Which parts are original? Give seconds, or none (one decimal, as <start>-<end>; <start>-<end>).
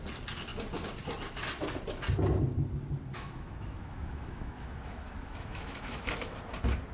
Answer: 0.0-3.1; 6.4-6.9